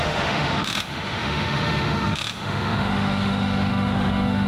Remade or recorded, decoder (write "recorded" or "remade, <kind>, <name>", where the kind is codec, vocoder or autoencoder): remade, autoencoder, DAC-VAE